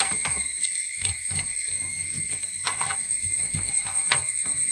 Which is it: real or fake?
fake